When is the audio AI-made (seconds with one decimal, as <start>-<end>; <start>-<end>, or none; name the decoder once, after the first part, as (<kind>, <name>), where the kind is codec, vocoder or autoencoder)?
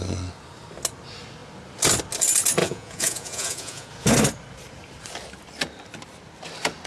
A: 2.6-3.9 (vocoder, Vocos)